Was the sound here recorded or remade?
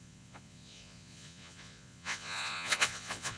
remade